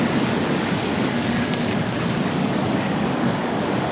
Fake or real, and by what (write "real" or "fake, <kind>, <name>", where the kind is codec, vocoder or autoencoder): fake, codec, DAC